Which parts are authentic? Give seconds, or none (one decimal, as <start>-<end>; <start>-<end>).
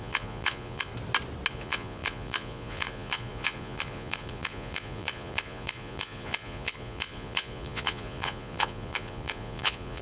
0.9-1.5